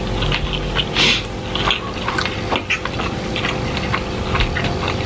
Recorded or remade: recorded